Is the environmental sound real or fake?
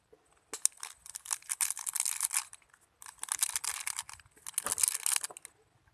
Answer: real